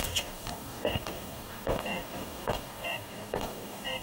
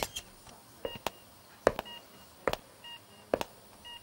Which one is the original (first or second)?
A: second